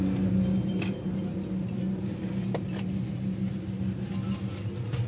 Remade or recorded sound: recorded